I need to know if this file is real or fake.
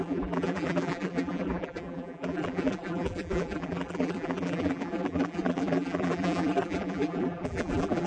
fake